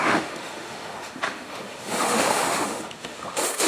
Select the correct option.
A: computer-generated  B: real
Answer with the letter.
A